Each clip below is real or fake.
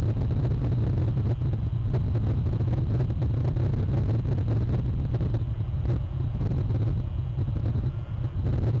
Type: real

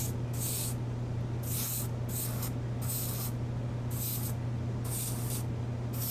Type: real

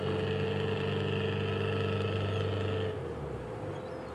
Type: real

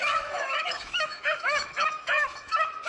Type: fake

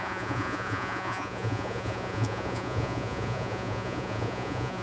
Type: fake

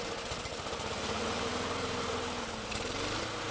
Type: fake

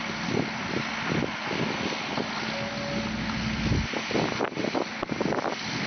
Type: real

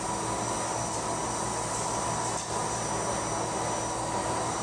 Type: real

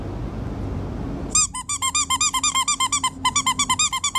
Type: real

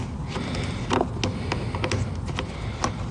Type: real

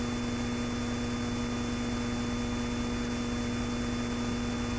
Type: real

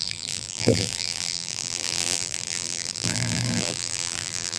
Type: fake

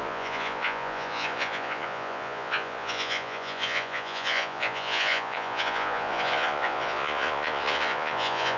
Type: fake